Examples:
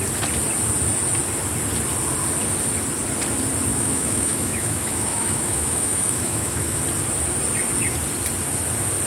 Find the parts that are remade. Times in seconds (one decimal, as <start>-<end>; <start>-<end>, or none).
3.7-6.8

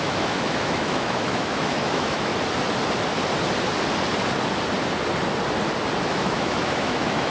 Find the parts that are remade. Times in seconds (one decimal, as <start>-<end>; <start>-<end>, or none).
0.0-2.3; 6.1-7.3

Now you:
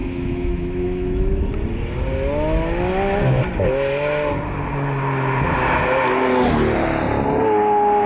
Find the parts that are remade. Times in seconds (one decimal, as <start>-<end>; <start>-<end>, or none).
0.0-1.4

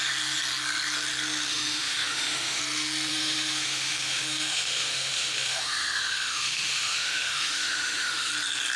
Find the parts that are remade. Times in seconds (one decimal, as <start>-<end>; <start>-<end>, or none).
1.5-2.6; 3.1-8.3